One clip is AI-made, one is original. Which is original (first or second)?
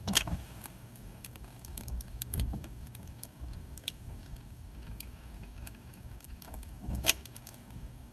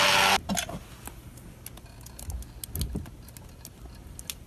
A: second